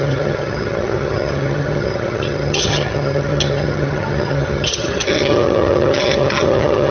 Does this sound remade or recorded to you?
remade